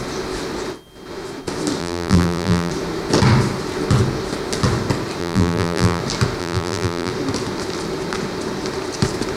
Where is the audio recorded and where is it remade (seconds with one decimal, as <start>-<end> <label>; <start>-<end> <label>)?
0.0-1.8 recorded; 1.8-2.7 remade; 2.7-5.2 recorded; 5.2-6.0 remade; 6.0-6.4 recorded; 6.4-7.1 remade; 7.1-9.4 recorded